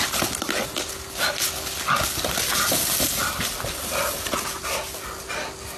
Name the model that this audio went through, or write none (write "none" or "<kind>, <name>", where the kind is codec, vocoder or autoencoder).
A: none